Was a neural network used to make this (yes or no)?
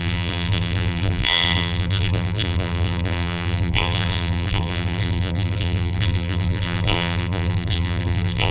yes